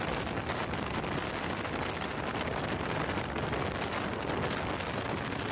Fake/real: real